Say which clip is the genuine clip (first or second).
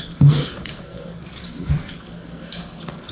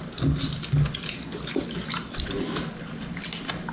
second